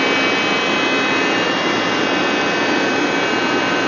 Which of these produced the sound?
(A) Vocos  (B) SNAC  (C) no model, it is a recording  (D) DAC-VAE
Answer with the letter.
C